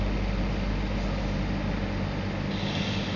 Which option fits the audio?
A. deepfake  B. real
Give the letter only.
B